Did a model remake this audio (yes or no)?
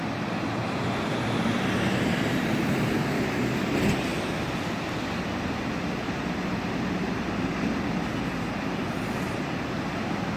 no